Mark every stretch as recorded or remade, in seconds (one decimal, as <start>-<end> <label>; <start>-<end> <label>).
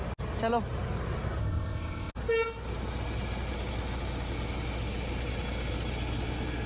0.0-1.4 recorded; 1.4-2.1 remade; 2.1-6.7 recorded